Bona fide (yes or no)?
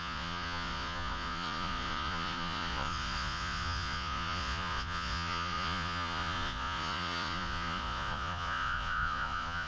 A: no